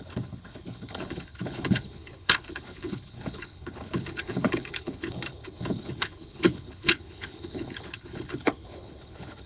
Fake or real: fake